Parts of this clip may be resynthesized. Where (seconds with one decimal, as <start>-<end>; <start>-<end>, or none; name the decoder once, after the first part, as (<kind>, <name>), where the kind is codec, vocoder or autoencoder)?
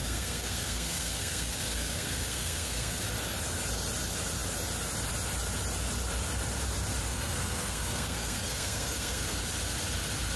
0.0-3.0 (codec, SNAC); 7.1-9.4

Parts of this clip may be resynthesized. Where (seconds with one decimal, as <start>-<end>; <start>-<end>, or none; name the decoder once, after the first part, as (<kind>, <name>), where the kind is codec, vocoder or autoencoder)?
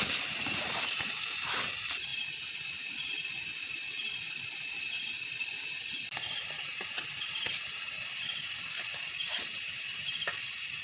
none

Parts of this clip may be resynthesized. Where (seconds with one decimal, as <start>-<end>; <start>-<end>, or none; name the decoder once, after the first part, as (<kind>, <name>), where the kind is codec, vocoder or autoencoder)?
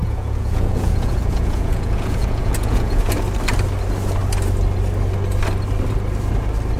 0.0-3.1 (vocoder, Vocos)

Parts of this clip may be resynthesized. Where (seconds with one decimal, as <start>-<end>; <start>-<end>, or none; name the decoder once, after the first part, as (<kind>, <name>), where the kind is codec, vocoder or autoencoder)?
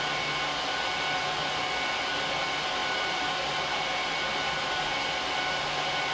none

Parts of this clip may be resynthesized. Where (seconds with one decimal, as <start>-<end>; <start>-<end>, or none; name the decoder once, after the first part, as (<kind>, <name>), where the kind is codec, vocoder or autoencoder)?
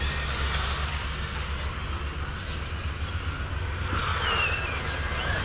none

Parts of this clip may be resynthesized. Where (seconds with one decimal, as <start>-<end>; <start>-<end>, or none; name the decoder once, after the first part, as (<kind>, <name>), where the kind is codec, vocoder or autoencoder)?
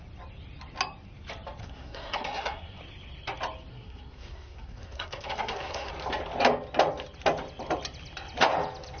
1.6-2.8 (codec, SNAC); 3.7-5.9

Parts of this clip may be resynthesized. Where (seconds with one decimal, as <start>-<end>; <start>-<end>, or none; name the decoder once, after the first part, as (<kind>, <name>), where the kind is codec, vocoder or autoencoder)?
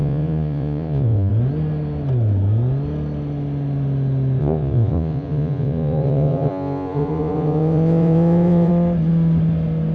0.0-1.3 (vocoder, Vocos); 4.4-8.7